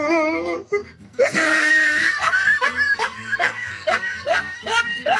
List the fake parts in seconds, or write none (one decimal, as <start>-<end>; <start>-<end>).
0.0-5.2

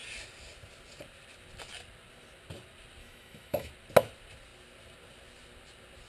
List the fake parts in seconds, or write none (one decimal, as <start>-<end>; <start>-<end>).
3.0-3.7

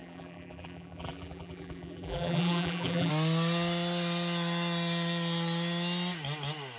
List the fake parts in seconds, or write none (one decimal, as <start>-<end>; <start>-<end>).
0.0-3.1

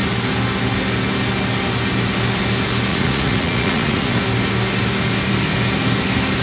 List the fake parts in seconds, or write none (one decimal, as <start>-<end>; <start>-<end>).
2.9-4.2

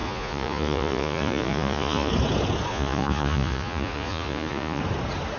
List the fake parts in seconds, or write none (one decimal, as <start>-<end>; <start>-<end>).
0.0-2.1; 2.7-4.8

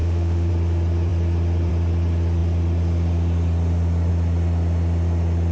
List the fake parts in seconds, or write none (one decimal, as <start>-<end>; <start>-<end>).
0.0-0.5